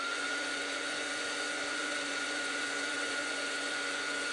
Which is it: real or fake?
fake